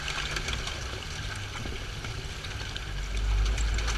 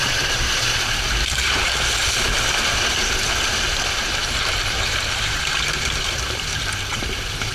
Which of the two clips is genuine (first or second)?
first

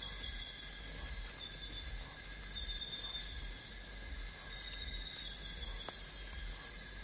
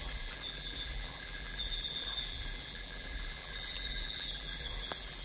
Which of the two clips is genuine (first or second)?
first